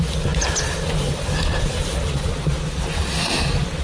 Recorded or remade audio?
recorded